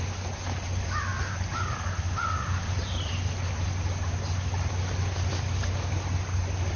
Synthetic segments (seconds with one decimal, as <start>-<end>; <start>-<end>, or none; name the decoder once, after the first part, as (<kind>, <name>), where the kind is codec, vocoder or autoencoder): none